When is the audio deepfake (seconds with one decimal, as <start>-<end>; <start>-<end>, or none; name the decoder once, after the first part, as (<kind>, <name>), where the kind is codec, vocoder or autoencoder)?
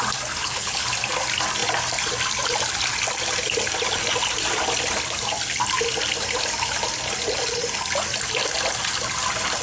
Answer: 0.4-0.9 (codec, HILCodec)